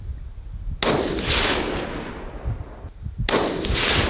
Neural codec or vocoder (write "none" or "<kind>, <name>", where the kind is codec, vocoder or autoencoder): none